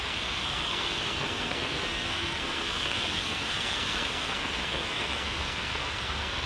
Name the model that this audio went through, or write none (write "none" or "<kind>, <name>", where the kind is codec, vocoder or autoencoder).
codec, SNAC